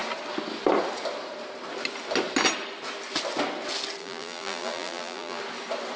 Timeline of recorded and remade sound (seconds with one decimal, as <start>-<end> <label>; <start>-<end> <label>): 0.0-4.0 recorded; 4.0-5.4 remade; 5.4-6.0 recorded

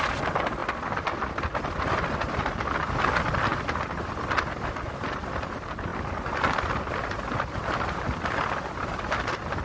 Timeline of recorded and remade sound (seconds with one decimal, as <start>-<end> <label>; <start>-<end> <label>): 0.0-9.6 recorded

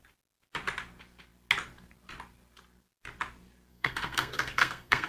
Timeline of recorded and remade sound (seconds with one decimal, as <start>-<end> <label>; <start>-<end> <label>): 0.0-3.7 recorded; 3.7-5.1 remade

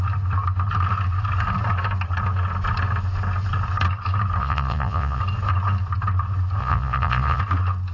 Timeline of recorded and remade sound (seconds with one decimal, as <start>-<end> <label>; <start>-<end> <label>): 0.0-4.4 recorded; 4.4-5.2 remade; 5.2-6.6 recorded; 6.6-7.4 remade; 7.4-7.9 recorded